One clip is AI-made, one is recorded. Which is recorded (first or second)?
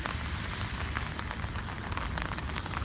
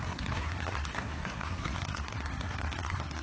first